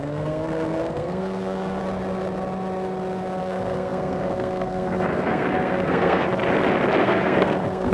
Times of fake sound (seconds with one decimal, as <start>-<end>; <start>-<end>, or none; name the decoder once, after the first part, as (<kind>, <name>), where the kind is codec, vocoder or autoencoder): 0.0-1.8 (codec, SNAC); 3.4-6.4; 7.0-7.9